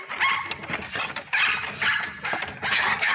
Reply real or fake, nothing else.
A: real